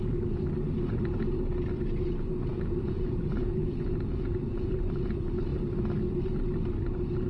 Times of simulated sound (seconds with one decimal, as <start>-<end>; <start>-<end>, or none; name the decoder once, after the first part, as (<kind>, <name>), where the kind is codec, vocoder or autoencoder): 2.5-4.7 (vocoder, Vocos)

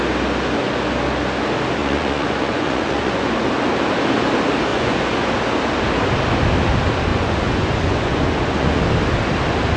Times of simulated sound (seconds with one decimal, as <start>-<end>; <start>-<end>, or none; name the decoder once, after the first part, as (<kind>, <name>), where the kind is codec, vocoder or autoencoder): 1.8-3.3 (vocoder, Vocos); 4.7-5.3; 7.1-8.8

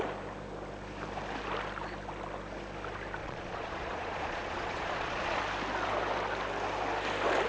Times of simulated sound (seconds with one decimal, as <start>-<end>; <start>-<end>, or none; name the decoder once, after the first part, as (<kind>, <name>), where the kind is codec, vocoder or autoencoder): 3.2-5.4 (vocoder, Vocos)

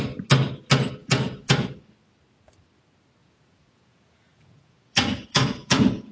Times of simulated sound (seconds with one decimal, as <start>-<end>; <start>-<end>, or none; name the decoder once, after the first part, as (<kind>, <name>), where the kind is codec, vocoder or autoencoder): 1.0-1.7 (vocoder, Vocos); 3.2-6.1

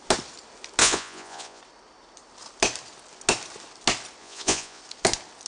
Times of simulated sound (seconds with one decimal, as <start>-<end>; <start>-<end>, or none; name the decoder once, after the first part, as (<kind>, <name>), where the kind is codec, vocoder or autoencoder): 0.8-1.6 (vocoder, Vocos); 4.2-4.8

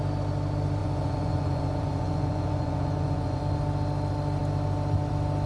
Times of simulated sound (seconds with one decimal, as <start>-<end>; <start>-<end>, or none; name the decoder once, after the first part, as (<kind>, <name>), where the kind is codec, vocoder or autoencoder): 0.8-3.4 (vocoder, Vocos)

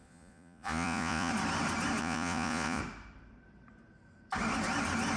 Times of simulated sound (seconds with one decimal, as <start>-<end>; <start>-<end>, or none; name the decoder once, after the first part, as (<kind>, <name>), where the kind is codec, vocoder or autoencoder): 0.0-1.3 (vocoder, Vocos); 2.0-2.8